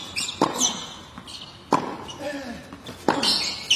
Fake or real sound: real